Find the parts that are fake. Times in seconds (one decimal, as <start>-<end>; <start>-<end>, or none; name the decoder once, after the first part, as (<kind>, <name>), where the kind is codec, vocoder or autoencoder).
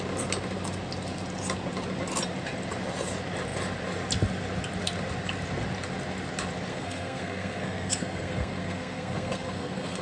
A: 6.7-10.0 (codec, SNAC)